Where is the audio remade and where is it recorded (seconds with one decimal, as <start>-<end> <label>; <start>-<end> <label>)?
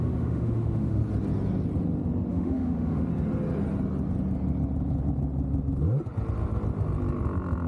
0.0-1.0 remade; 1.0-2.3 recorded; 2.3-3.1 remade; 3.1-7.7 recorded